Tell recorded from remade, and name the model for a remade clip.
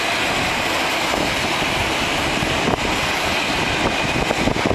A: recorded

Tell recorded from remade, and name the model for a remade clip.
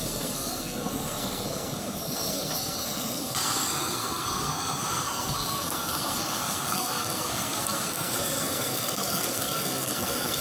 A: remade, codec, SNAC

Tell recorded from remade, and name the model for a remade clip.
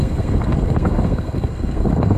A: remade, codec, SNAC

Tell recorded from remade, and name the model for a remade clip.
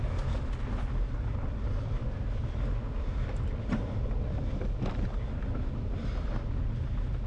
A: recorded